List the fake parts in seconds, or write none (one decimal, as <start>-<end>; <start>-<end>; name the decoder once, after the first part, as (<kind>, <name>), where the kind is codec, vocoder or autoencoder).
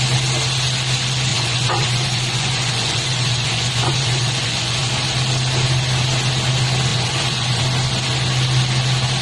1.3-4.9 (vocoder, Vocos); 6.9-7.6